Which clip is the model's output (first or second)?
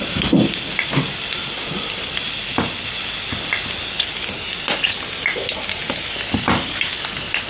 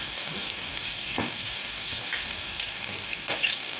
second